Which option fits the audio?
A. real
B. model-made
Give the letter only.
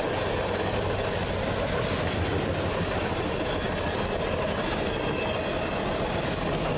A